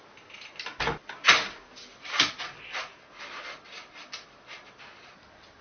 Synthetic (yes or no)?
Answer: no